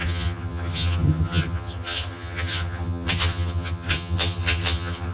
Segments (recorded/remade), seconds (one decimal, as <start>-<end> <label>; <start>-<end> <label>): 0.0-5.1 remade